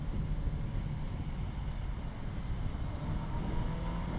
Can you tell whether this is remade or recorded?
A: recorded